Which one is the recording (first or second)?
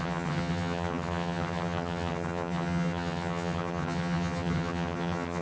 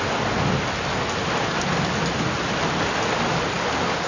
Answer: second